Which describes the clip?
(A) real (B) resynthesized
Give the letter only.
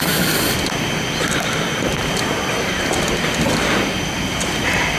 A